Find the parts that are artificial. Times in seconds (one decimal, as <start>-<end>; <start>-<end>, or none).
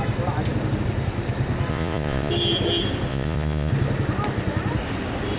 1.7-2.3; 3.1-3.7